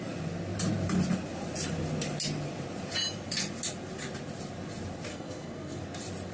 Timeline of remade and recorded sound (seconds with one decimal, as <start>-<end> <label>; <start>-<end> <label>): 0.0-5.1 recorded; 5.1-5.8 remade; 5.8-6.3 recorded